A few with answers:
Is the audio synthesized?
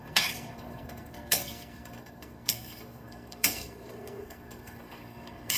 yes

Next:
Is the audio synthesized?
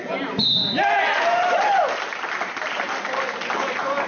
no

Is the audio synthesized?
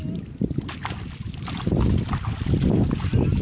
no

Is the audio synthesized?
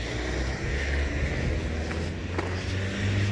no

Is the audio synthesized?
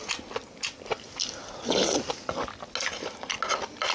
no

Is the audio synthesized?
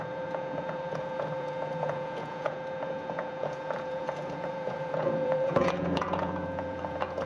yes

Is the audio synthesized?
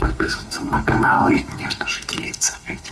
yes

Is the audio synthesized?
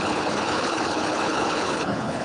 yes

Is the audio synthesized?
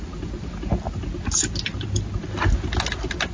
no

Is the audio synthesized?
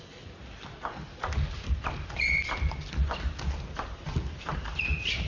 no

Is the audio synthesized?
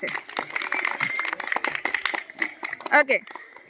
no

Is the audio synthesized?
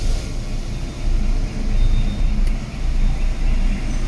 no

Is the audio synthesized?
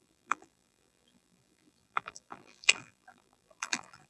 yes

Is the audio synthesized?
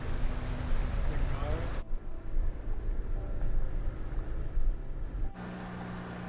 no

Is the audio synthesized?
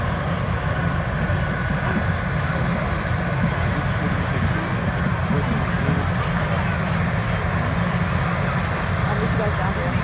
no